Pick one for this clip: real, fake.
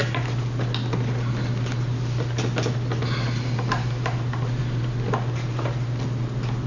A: real